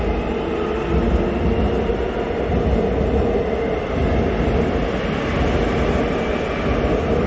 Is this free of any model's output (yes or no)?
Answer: yes